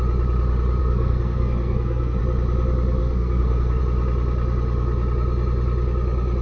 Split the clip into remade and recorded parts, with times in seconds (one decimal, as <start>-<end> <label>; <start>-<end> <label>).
0.0-0.8 recorded; 0.8-2.2 remade; 2.2-3.0 recorded; 3.0-3.8 remade; 3.8-6.4 recorded